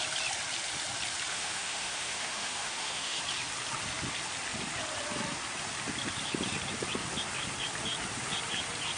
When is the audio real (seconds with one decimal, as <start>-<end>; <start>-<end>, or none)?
0.0-1.3; 3.2-9.0